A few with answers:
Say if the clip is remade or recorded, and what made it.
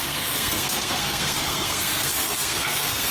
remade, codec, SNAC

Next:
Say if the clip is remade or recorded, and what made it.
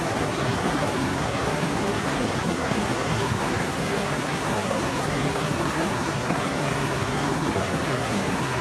remade, codec, SNAC